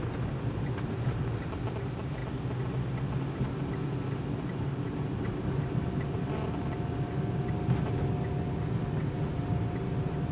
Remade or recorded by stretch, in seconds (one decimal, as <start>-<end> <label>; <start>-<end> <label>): 0.0-10.3 recorded